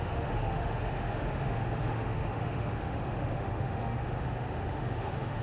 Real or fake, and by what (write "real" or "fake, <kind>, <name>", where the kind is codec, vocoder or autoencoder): fake, autoencoder, DAC-VAE